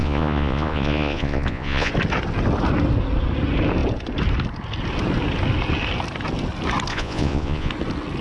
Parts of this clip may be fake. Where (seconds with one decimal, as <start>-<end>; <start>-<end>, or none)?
0.0-1.9; 6.9-7.7